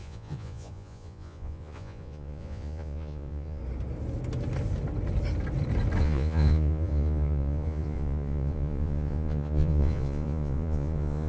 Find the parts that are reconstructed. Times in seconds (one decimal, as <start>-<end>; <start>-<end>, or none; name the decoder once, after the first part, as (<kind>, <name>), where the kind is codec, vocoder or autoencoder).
0.0-3.6 (vocoder, Vocos); 6.0-11.3